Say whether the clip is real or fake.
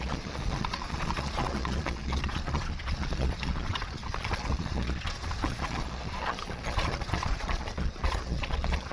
fake